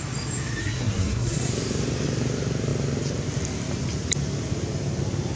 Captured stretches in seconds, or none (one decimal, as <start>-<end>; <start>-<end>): 0.0-0.6; 1.5-5.4